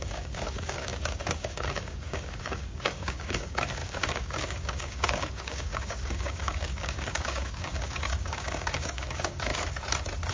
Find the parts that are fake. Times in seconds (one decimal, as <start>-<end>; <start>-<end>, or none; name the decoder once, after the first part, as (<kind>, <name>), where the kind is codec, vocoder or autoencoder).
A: 0.0-9.5 (codec, DAC)